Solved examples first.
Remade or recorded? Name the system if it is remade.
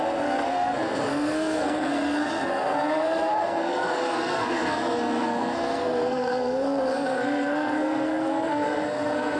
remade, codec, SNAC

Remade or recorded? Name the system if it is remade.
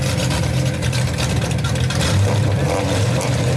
remade, vocoder, BigVGAN v2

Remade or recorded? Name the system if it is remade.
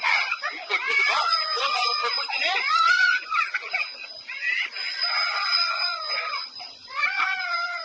remade, vocoder, Vocos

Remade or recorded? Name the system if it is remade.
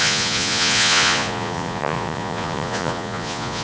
remade, vocoder, Vocos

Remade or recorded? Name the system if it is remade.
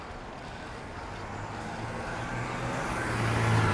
recorded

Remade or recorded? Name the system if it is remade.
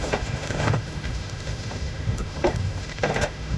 remade, autoencoder, DAC-VAE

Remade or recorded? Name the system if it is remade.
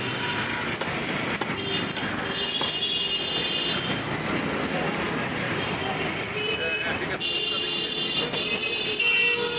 recorded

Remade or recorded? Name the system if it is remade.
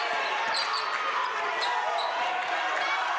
recorded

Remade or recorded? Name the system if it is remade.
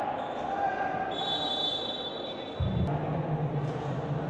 recorded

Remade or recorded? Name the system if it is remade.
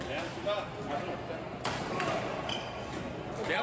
recorded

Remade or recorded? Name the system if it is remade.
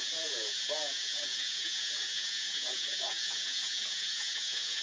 remade, vocoder, Vocos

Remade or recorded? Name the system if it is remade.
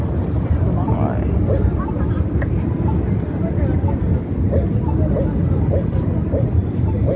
recorded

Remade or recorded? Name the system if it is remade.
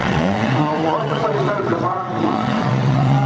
remade, vocoder, WaveNeXt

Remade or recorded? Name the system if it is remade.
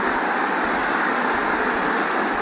recorded